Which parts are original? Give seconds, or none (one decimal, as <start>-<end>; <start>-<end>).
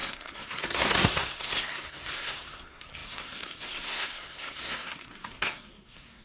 none